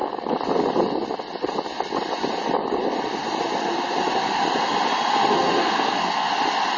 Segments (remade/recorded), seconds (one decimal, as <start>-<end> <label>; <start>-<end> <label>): 0.0-5.3 recorded; 5.3-6.3 remade; 6.3-6.8 recorded